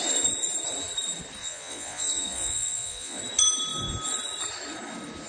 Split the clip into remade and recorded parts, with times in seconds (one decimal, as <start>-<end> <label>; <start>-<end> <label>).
0.0-1.4 recorded; 1.4-3.2 remade; 3.2-5.3 recorded